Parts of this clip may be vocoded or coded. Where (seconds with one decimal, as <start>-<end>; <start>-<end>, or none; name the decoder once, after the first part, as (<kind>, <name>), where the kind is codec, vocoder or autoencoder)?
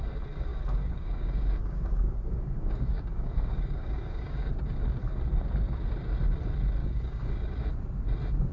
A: 0.5-4.5 (codec, DAC); 6.8-7.6